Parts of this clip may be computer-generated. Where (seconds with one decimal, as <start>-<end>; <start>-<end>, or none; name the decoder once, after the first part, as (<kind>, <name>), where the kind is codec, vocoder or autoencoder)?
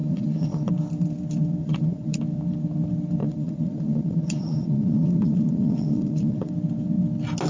0.0-0.7 (vocoder, Vocos); 1.6-2.2; 3.2-6.5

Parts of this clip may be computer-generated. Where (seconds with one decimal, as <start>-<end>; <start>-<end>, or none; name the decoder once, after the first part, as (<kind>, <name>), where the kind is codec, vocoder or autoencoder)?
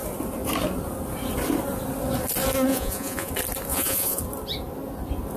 2.7-3.3 (vocoder, Vocos); 3.7-4.2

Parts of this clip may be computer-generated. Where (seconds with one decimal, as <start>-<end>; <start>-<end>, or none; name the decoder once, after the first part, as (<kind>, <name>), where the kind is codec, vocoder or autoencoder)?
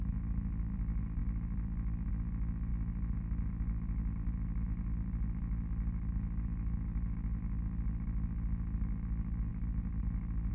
none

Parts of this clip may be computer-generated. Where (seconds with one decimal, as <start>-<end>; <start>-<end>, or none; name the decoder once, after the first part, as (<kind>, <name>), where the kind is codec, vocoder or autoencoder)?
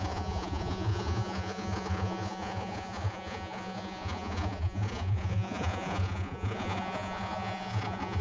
0.0-8.2 (vocoder, Vocos)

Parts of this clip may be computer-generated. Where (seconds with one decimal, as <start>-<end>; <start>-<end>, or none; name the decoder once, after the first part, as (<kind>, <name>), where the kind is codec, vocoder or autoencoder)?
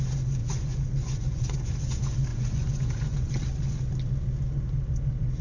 0.4-1.8 (vocoder, Vocos); 2.3-3.3